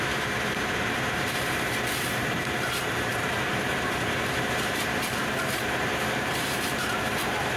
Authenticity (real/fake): fake